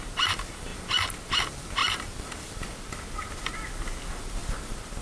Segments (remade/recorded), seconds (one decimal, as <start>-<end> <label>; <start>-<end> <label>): 0.0-1.8 recorded; 1.8-3.0 remade; 3.0-5.0 recorded